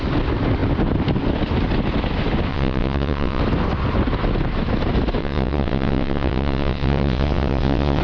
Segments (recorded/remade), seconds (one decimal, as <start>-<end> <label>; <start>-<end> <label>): 0.0-2.5 recorded; 2.5-3.4 remade; 3.4-5.2 recorded; 5.2-8.0 remade